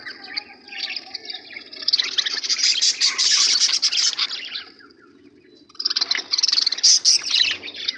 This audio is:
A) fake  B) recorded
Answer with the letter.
B